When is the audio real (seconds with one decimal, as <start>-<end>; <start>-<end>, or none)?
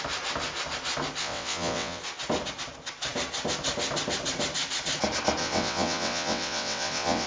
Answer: 0.0-1.2; 2.0-5.4